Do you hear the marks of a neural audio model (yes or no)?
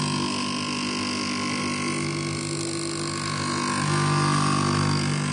no